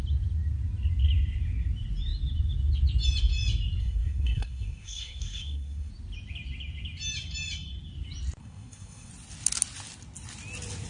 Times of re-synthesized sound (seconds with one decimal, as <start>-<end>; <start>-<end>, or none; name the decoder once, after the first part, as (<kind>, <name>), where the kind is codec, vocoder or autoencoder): 3.8-5.9 (codec, SNAC); 8.4-9.1